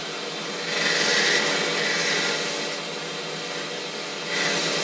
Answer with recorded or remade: recorded